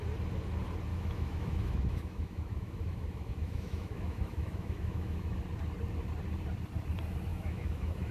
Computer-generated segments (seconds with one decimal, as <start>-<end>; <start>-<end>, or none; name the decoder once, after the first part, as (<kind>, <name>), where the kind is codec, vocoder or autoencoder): 0.9-5.4 (autoencoder, DAC-VAE); 7.3-8.1